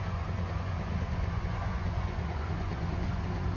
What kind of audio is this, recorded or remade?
remade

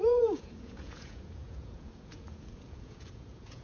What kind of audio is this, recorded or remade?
remade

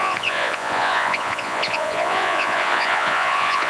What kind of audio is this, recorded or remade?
remade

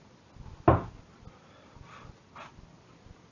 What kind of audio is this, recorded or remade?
recorded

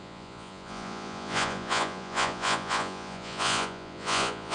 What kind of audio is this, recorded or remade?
remade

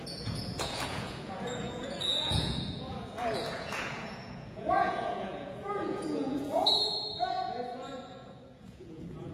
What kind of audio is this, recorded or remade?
remade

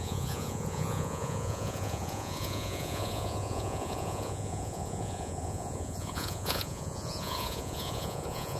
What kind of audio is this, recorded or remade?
remade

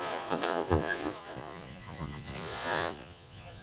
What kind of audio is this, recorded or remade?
remade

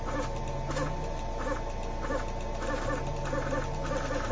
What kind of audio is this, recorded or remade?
recorded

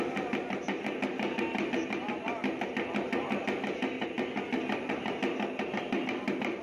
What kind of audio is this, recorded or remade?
recorded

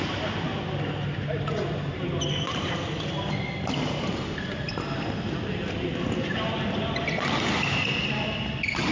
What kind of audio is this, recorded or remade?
recorded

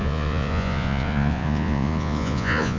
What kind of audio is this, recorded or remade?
remade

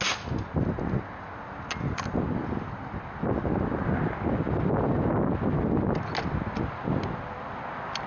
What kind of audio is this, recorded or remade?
recorded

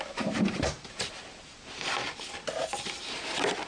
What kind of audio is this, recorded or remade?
recorded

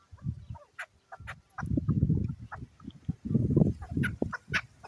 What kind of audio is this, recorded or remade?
recorded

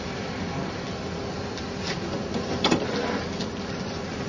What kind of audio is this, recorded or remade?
recorded